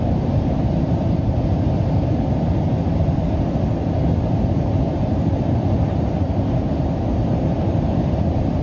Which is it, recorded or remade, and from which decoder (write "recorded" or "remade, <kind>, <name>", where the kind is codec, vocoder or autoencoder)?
remade, vocoder, BigVGAN v2